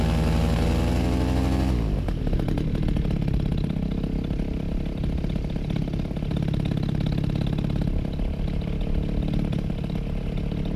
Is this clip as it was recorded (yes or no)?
yes